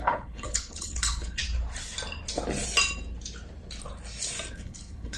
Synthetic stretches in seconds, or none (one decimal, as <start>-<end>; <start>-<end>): 0.0-1.4; 4.5-5.2